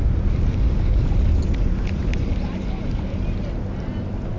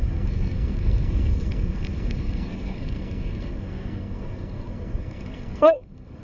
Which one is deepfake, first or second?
second